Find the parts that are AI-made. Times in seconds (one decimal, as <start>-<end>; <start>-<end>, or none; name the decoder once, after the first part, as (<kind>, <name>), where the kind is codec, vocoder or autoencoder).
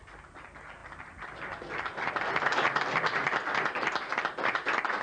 none